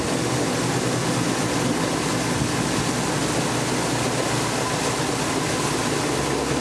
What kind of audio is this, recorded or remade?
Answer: recorded